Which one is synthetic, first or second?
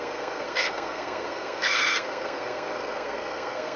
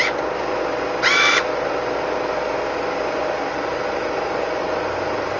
first